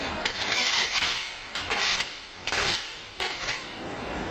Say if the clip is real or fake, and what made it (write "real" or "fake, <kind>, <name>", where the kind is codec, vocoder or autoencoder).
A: fake, codec, DAC